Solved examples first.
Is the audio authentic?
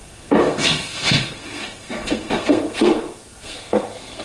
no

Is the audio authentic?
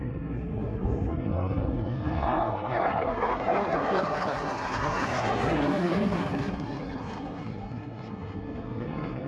no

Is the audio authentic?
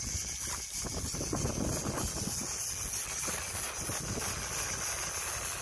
yes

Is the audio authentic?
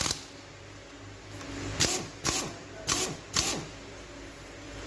yes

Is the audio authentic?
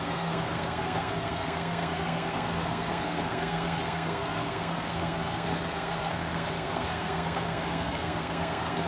no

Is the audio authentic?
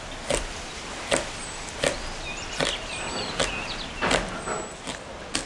yes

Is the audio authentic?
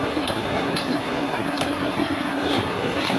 no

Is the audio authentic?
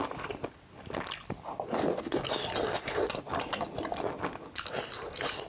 yes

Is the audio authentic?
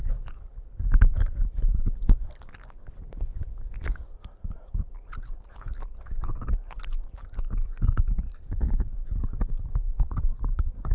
yes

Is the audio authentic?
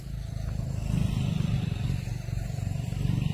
yes